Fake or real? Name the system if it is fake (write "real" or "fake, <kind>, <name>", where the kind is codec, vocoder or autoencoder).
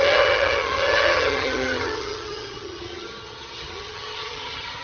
fake, vocoder, HiFi-GAN